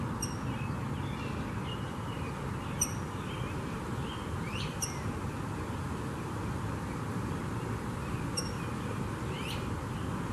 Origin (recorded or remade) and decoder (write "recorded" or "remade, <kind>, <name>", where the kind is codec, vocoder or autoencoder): recorded